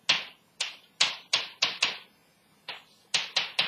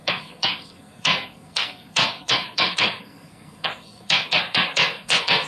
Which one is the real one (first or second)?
first